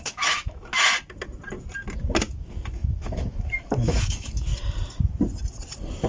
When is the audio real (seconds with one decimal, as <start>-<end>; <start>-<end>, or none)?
0.7-2.3; 4.5-6.1